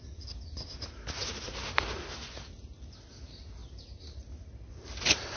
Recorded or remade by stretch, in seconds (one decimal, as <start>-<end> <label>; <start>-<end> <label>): 0.0-5.4 recorded